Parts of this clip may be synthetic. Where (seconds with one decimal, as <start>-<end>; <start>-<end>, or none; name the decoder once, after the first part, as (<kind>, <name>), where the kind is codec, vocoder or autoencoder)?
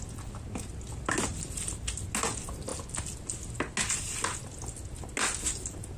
1.3-2.0 (vocoder, BigVGAN v2)